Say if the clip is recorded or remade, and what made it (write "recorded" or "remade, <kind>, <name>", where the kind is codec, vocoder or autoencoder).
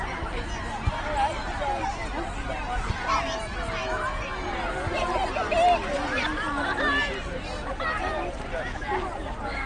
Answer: recorded